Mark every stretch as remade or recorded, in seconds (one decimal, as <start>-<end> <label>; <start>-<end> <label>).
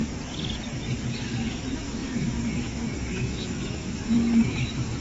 0.0-1.0 recorded; 1.0-5.0 remade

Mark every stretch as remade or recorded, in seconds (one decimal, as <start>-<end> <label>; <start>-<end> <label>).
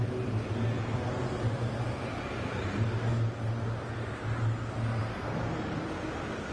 0.0-6.5 recorded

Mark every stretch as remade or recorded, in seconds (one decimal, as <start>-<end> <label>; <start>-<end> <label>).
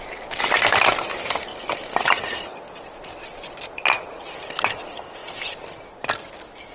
0.0-6.7 recorded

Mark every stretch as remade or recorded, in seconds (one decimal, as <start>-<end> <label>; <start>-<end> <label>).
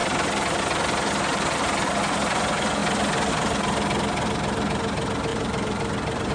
0.0-5.3 recorded; 5.3-6.3 remade